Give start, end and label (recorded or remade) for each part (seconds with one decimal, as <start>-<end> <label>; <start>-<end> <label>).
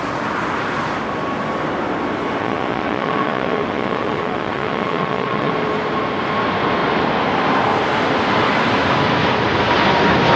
0.0-2.4 recorded; 2.4-5.5 remade; 5.5-10.4 recorded